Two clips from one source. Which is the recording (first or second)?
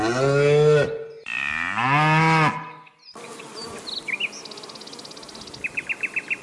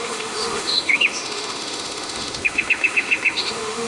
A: first